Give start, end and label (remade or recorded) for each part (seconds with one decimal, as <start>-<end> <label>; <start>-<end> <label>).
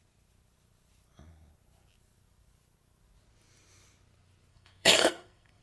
0.0-4.5 recorded; 4.5-5.6 remade